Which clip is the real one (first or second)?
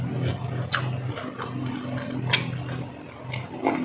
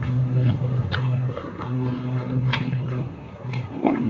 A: first